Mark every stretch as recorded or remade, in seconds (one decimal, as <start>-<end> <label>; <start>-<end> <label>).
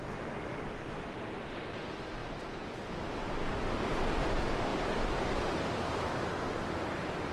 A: 0.0-0.5 recorded; 0.5-1.6 remade; 1.6-7.3 recorded